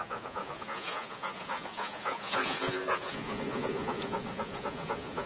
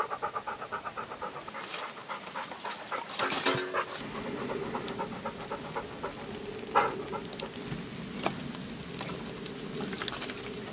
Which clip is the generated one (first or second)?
first